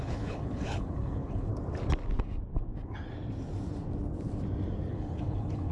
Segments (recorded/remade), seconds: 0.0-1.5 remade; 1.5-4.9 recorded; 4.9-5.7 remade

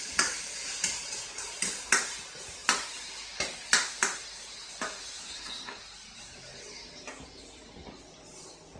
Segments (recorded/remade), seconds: 0.0-5.3 recorded; 5.3-5.8 remade; 5.8-8.8 recorded

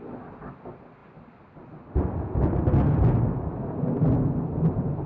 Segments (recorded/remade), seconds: 0.0-5.1 recorded